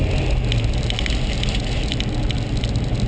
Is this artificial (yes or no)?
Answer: no